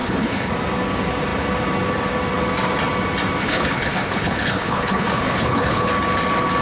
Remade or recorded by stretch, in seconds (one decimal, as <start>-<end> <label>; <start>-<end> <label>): 0.0-0.5 remade; 0.5-3.4 recorded; 3.4-5.9 remade; 5.9-6.6 recorded